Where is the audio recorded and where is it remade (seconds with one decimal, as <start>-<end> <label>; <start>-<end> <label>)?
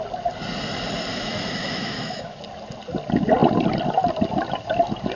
0.0-1.1 recorded; 1.1-2.4 remade; 2.4-5.2 recorded